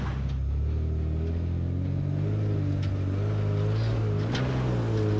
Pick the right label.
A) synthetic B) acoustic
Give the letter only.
B